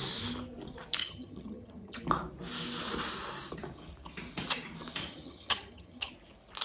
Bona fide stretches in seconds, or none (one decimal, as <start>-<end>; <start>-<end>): 0.0-1.0; 2.0-5.0; 6.1-6.6